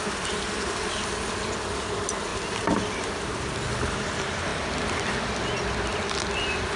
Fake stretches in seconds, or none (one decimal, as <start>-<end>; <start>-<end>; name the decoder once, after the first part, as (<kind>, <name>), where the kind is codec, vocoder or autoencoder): none